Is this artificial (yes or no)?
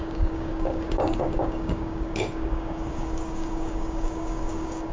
yes